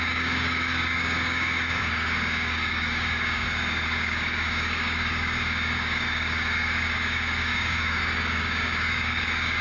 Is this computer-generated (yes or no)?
yes